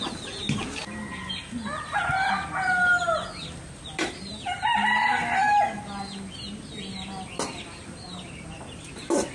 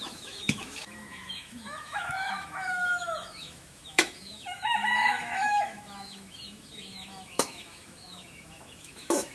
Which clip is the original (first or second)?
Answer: first